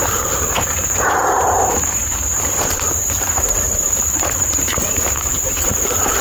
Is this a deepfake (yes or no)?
yes